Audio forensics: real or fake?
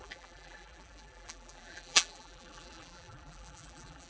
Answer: fake